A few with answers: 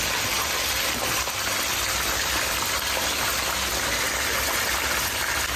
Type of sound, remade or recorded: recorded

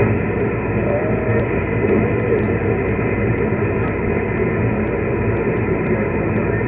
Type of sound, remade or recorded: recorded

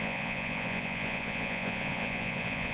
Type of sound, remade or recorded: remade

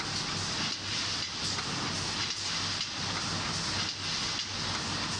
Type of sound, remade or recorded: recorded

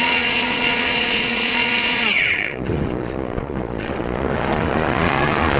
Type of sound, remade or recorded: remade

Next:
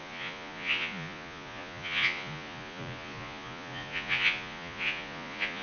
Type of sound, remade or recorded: remade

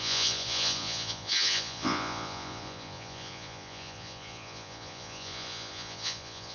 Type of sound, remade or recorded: remade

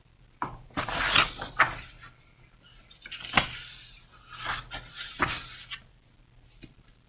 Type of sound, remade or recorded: recorded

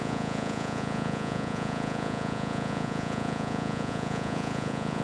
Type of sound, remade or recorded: remade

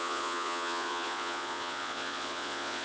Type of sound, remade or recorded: remade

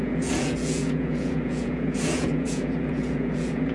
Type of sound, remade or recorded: remade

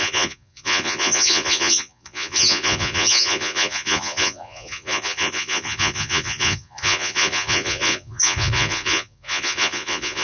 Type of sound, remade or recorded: remade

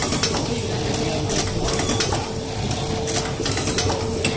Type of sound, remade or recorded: recorded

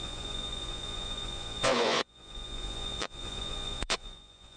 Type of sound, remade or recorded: remade